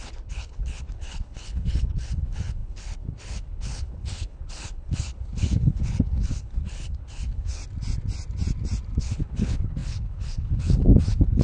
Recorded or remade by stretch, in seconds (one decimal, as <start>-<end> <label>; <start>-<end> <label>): 0.0-7.6 remade; 7.6-9.0 recorded; 9.0-11.4 remade